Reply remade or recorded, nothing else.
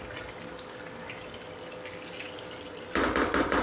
recorded